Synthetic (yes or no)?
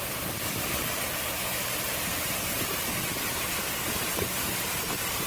yes